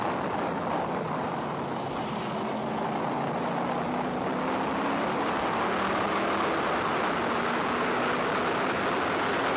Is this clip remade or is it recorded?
recorded